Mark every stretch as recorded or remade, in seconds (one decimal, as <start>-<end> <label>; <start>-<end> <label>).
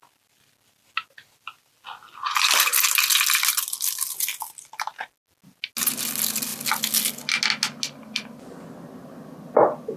0.0-10.0 recorded